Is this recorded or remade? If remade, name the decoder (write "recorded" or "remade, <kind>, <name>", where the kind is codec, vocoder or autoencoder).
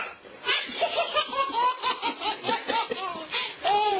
recorded